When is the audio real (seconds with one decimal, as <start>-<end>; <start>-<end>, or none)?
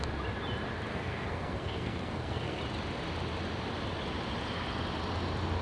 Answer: 0.0-0.9; 2.6-5.6